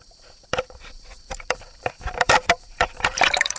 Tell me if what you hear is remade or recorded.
remade